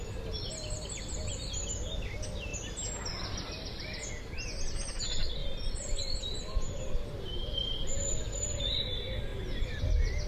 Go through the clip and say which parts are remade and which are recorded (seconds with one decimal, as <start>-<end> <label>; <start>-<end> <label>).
0.0-0.5 recorded; 0.5-1.1 remade; 1.1-2.5 recorded; 2.5-4.1 remade; 4.1-5.4 recorded; 5.4-7.3 remade; 7.3-9.3 recorded; 9.3-9.8 remade; 9.8-10.3 recorded